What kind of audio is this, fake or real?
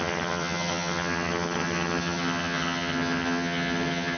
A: fake